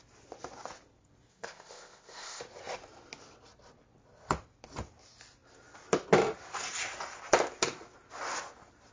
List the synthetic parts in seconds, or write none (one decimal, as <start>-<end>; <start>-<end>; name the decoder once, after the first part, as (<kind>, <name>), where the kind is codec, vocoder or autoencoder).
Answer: 1.3-2.4 (codec, ZipCodec)